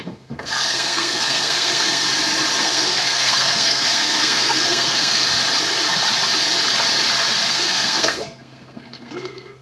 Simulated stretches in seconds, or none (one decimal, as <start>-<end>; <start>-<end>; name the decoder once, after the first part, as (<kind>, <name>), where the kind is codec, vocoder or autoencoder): 0.0-2.1 (codec, SNAC); 2.6-5.3; 7.5-9.6